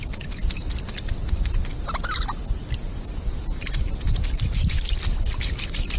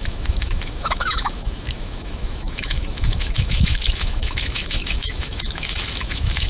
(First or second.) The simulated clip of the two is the second